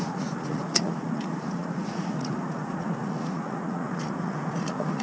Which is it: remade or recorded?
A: remade